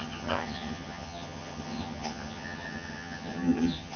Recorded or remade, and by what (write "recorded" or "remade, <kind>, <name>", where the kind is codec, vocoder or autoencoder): remade, vocoder, HiFi-GAN